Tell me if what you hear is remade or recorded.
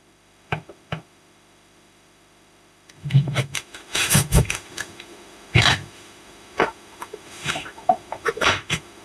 remade